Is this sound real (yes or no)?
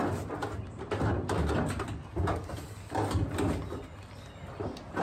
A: yes